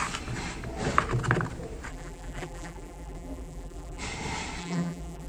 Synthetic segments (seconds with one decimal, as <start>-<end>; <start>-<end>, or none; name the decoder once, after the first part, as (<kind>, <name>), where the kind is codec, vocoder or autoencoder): 1.9-4.0 (vocoder, BigVGAN v2); 4.6-5.3